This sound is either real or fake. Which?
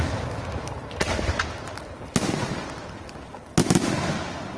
real